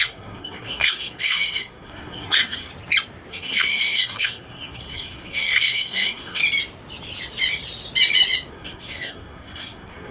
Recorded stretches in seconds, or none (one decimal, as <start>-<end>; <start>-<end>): 2.7-3.3; 6.4-8.5